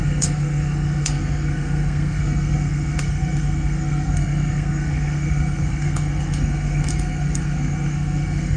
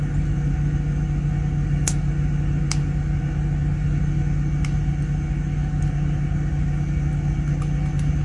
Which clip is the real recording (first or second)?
second